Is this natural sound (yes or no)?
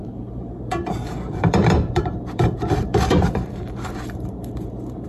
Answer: no